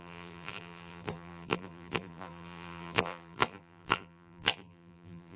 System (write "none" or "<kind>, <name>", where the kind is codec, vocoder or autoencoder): vocoder, BigVGAN v2